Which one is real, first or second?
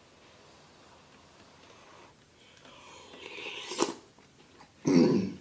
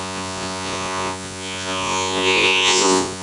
first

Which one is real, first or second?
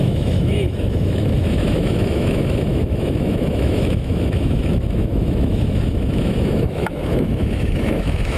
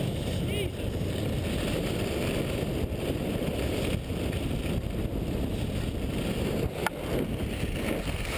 second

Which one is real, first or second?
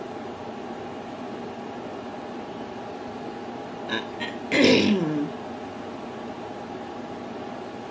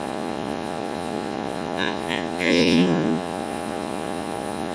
first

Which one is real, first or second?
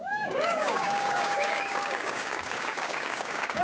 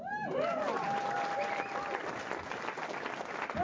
second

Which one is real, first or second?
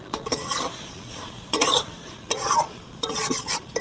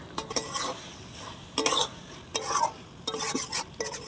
second